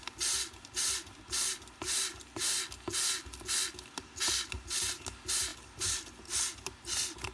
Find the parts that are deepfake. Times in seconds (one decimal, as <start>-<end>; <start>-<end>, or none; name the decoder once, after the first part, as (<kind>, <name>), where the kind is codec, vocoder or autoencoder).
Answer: none